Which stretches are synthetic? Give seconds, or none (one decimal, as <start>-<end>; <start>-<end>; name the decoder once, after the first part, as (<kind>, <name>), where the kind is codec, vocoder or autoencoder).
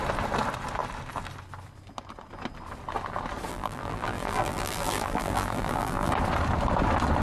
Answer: 3.5-6.1 (vocoder, BigVGAN v2)